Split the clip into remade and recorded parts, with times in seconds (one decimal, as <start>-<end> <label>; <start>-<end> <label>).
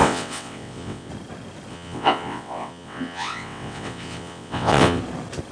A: 0.0-1.1 remade; 1.1-1.7 recorded; 1.7-5.0 remade; 5.0-5.5 recorded